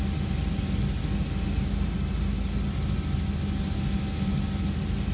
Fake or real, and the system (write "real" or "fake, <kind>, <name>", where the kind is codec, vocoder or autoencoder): real